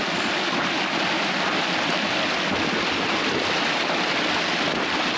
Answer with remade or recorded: recorded